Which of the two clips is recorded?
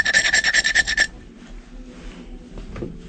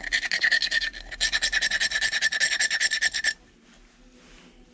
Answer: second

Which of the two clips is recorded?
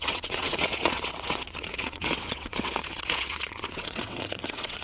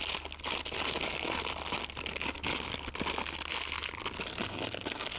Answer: second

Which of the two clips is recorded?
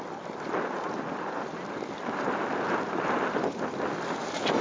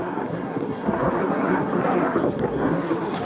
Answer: first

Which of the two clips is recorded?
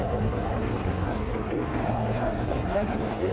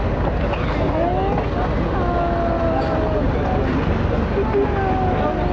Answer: second